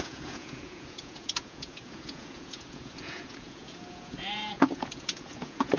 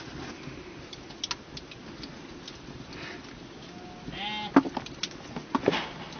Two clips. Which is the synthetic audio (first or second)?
first